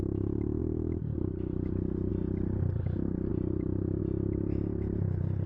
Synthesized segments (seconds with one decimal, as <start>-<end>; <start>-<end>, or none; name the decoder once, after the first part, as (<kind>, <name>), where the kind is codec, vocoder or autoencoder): 0.6-2.1 (vocoder, BigVGAN v2); 3.3-4.0